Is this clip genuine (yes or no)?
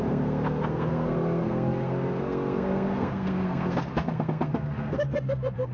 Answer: no